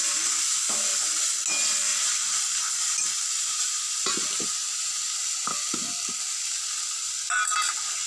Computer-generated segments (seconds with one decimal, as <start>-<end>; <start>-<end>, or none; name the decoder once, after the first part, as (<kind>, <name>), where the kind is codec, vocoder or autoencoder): none